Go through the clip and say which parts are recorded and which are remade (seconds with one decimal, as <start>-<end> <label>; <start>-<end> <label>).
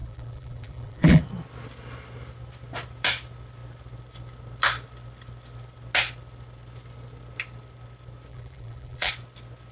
0.0-1.2 remade; 1.2-8.3 recorded; 8.3-9.1 remade; 9.1-9.7 recorded